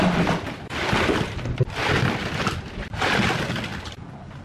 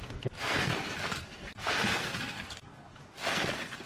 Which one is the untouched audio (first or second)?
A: first